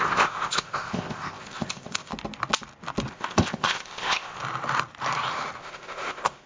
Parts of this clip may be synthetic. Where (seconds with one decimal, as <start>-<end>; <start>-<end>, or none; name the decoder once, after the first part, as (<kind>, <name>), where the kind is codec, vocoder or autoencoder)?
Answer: 0.0-2.1 (codec, ZipCodec); 3.1-4.4; 5.6-6.5